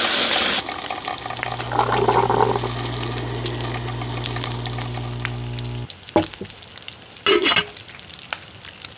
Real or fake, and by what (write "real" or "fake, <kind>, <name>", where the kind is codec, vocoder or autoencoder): real